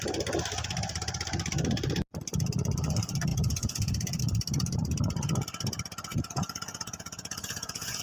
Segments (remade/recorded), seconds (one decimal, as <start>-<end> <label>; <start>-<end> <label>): 0.0-3.3 recorded; 3.3-4.2 remade; 4.2-6.1 recorded; 6.1-8.0 remade